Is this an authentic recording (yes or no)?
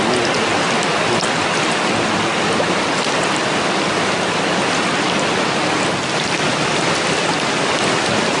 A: yes